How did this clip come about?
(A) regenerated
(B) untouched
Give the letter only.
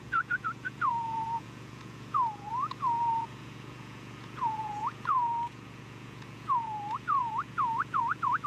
A